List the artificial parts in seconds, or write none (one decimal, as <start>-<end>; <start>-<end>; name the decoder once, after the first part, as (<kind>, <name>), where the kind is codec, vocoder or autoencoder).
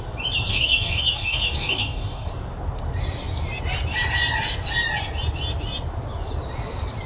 0.5-2.3 (codec, DAC)